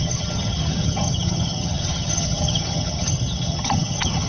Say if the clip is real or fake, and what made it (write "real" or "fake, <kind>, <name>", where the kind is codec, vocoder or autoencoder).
fake, vocoder, HiFi-GAN